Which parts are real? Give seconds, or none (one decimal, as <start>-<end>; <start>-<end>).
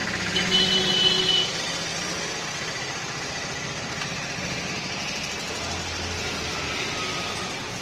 0.0-7.8